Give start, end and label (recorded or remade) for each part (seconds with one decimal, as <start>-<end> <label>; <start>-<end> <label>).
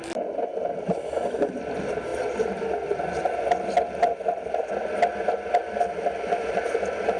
0.0-7.2 recorded